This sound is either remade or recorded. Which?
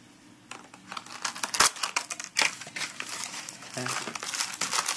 recorded